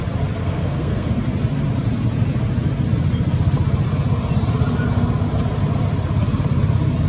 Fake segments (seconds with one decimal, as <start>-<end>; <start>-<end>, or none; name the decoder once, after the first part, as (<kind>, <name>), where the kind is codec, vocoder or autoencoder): 0.4-1.1 (codec, SNAC)